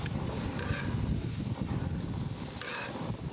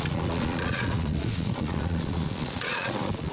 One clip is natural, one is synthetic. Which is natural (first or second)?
first